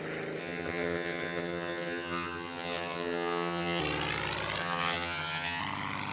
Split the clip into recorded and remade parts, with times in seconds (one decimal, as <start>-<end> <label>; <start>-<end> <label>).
0.0-0.4 recorded; 0.4-3.8 remade; 3.8-4.6 recorded; 4.6-5.6 remade; 5.6-6.1 recorded